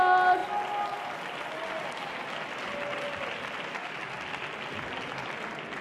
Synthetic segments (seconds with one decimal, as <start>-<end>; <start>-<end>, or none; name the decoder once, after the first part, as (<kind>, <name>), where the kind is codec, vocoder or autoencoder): none